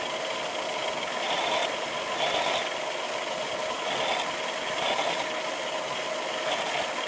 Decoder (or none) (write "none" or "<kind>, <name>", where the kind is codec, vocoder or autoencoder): none